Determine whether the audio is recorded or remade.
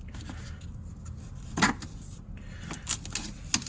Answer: recorded